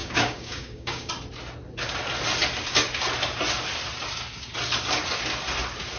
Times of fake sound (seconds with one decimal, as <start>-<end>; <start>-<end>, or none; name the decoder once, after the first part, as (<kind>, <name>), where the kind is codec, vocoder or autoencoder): 0.0-1.1 (codec, DAC)

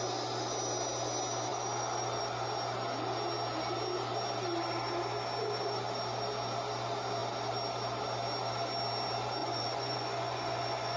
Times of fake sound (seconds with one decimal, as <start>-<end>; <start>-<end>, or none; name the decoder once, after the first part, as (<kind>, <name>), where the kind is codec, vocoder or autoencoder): 9.4-11.0 (vocoder, Vocos)

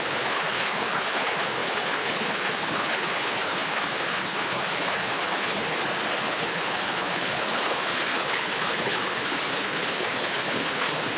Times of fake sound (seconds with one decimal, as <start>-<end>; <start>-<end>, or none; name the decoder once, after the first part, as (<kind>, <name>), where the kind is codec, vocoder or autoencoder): 0.0-5.8 (codec, HILCodec); 6.3-11.2

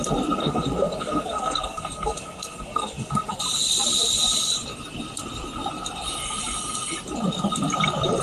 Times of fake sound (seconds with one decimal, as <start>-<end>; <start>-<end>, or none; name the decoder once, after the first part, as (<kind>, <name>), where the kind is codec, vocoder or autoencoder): 0.4-3.4 (codec, SNAC)

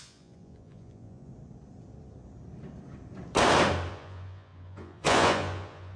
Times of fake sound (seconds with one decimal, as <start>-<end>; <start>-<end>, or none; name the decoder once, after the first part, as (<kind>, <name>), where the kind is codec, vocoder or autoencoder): 0.0-1.3 (vocoder, Vocos); 3.9-6.0

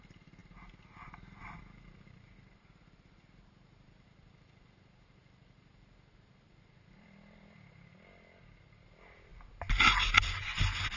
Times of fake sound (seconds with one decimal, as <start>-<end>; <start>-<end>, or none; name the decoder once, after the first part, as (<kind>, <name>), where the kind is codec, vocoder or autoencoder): none

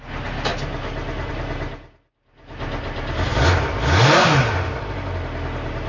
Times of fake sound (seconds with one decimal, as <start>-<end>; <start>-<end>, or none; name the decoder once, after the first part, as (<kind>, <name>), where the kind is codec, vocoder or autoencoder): none

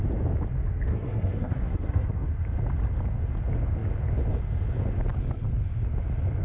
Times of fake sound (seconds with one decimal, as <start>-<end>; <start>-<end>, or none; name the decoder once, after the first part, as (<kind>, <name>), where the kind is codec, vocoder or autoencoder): 0.9-2.3 (codec, SNAC)